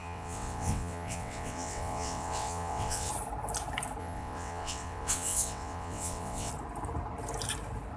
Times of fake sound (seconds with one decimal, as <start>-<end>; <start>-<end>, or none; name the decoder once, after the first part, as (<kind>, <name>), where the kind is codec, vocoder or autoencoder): 0.0-3.1 (vocoder, WaveNeXt); 4.0-6.5